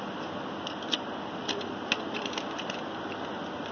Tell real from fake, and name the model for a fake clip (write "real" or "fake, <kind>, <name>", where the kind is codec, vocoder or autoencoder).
real